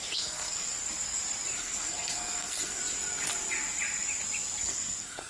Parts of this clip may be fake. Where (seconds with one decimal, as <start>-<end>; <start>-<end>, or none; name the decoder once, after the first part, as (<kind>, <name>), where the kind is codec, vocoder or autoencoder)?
0.0-0.8 (codec, SNAC); 1.6-2.8; 4.6-5.3